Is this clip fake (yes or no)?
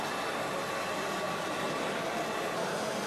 no